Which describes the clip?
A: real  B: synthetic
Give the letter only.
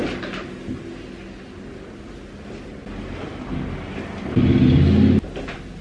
A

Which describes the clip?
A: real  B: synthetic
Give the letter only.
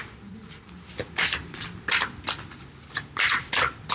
A